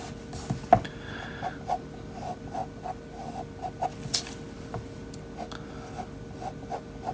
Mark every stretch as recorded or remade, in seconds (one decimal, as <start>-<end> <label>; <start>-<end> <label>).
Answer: 0.0-7.1 recorded